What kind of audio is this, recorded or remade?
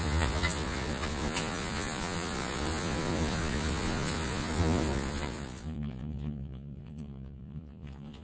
remade